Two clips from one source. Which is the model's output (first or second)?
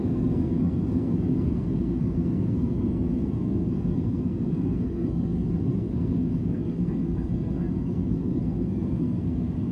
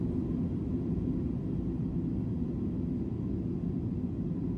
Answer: first